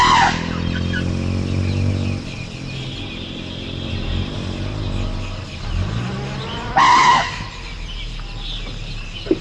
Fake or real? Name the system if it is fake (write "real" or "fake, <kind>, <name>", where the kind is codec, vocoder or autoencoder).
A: real